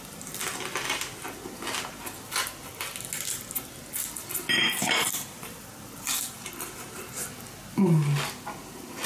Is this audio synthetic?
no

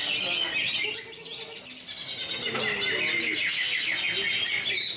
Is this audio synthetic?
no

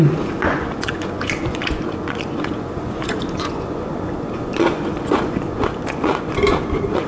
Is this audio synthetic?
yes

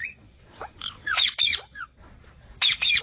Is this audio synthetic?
yes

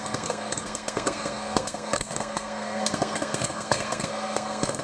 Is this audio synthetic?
yes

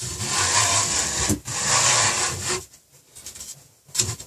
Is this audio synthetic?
no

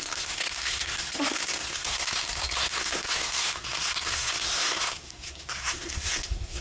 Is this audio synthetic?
yes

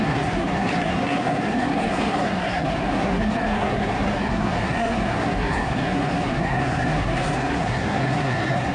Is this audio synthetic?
yes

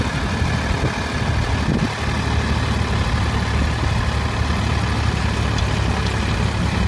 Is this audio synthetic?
no